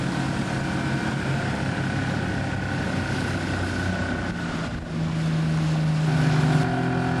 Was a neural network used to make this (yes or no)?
no